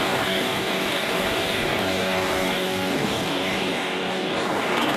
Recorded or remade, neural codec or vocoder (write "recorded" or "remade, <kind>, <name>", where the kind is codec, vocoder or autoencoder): remade, codec, DAC